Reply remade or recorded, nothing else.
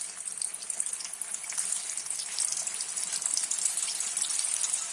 recorded